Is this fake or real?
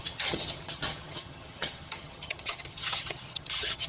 fake